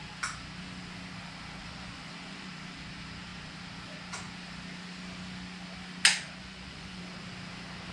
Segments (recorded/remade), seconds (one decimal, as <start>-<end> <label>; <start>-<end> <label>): 0.0-1.6 recorded; 1.6-2.5 remade; 2.5-6.4 recorded; 6.4-7.0 remade; 7.0-7.9 recorded